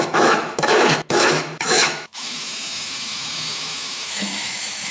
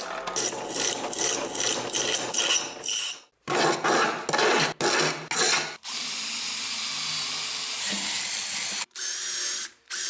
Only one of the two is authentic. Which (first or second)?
second